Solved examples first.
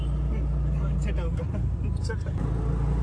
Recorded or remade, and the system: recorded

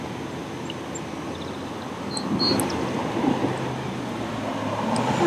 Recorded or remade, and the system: recorded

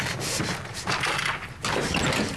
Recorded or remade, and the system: recorded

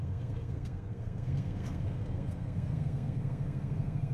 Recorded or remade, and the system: remade, codec, SNAC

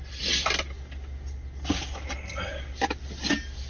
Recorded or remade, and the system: recorded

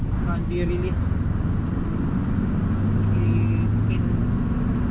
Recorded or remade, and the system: recorded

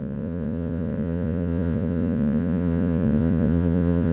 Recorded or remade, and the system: remade, vocoder, Vocos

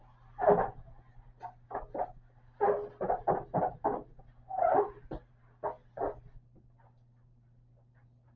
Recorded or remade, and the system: recorded